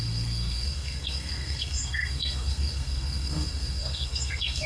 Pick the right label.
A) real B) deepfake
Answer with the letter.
B